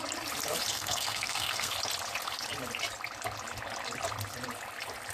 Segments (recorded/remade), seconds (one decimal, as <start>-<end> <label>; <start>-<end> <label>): 0.0-0.7 recorded; 0.7-1.7 remade; 1.7-5.1 recorded